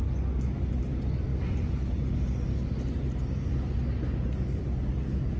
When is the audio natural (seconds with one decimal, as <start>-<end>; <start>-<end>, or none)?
0.0-5.4

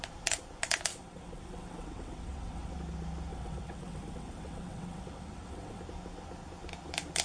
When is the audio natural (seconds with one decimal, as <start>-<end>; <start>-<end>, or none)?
0.0-0.9; 2.7-3.3; 5.8-7.2

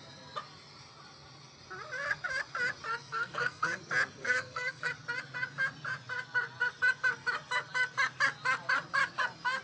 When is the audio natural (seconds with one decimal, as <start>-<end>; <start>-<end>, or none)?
0.0-3.0; 3.8-4.2; 4.9-9.6